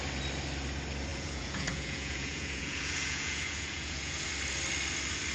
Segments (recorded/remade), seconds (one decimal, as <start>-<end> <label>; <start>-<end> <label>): 0.0-1.1 recorded; 1.1-4.3 remade; 4.3-5.3 recorded